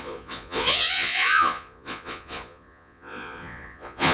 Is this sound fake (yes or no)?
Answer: yes